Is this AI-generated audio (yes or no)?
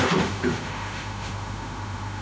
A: yes